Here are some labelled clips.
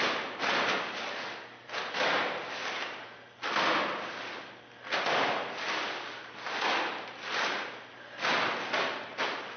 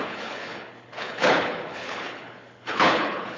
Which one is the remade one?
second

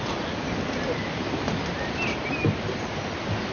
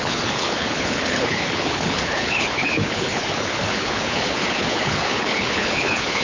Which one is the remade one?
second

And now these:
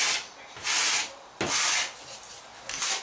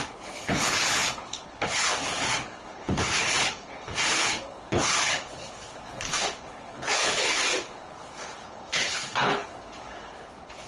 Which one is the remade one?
second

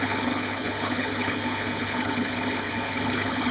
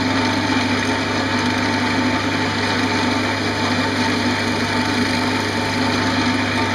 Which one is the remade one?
first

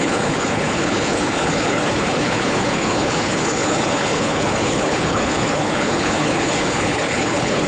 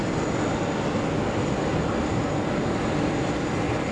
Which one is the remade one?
first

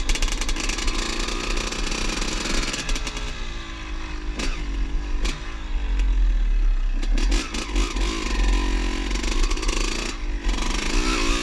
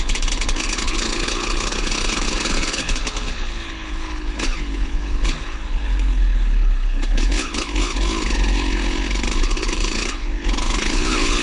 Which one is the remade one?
second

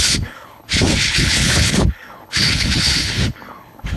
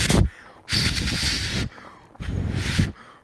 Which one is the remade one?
first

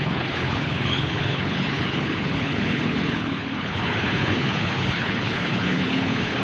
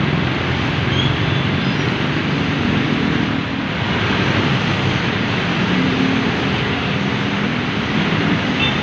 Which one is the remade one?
first